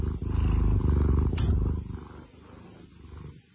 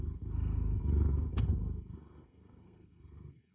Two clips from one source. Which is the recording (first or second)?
first